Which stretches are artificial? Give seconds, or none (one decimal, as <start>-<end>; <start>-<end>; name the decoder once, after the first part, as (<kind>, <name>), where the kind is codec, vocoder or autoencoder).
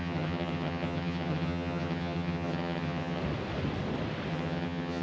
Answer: 0.0-3.2 (vocoder, HiFi-GAN); 4.3-5.0